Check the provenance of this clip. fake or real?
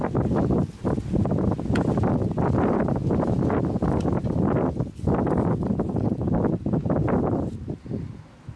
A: real